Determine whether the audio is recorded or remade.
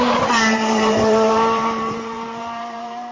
remade